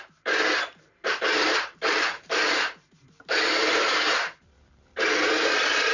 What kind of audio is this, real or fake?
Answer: fake